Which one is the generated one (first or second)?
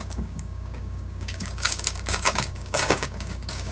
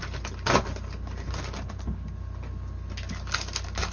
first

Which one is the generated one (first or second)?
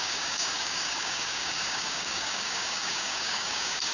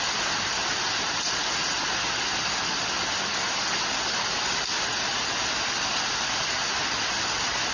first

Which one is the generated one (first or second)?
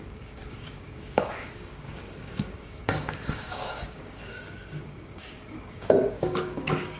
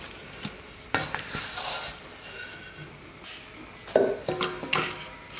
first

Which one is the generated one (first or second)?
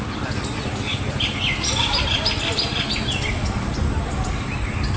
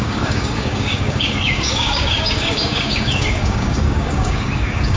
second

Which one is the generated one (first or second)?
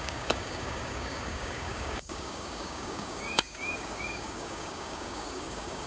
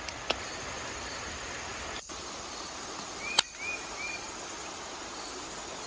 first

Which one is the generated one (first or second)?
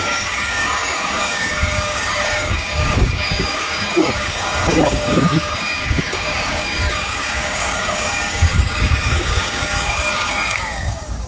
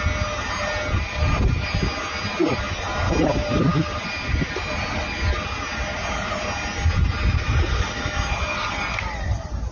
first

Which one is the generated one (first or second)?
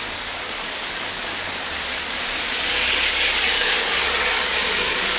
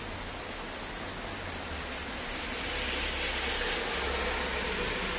first